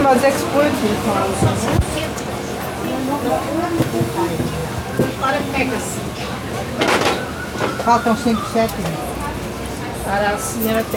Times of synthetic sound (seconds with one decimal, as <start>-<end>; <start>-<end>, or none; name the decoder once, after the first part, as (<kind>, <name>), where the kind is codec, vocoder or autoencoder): none